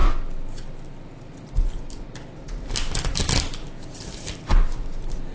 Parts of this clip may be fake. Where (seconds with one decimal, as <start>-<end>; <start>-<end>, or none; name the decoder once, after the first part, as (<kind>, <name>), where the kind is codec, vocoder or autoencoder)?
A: none